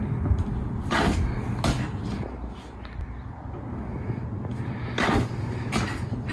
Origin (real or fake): real